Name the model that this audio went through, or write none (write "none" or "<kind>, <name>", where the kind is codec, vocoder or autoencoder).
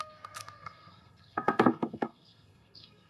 codec, SNAC